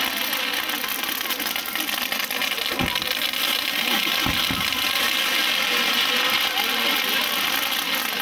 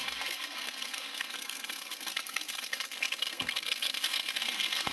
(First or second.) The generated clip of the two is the second